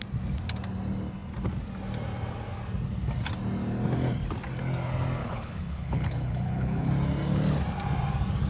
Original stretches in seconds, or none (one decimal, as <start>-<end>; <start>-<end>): 0.0-5.2; 6.9-8.5